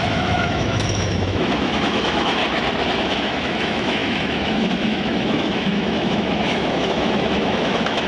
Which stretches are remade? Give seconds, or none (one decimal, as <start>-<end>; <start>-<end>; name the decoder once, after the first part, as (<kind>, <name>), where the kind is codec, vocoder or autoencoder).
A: 0.0-2.4 (autoencoder, DAC-VAE); 3.0-8.1